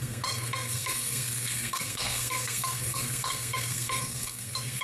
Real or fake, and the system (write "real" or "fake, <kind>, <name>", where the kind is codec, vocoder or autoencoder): fake, codec, SNAC